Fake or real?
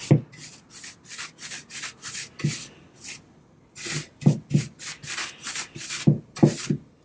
real